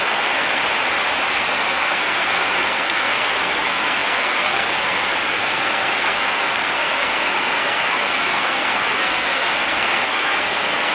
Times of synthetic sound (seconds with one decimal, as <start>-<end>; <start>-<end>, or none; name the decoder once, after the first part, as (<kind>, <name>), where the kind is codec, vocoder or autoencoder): 0.0-0.6 (codec, SNAC); 1.3-10.9